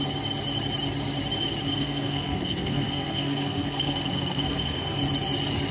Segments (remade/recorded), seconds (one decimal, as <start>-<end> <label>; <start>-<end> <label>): 0.0-1.7 recorded; 1.7-5.0 remade; 5.0-5.7 recorded